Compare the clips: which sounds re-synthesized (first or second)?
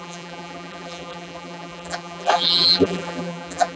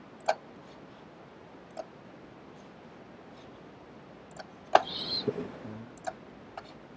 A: first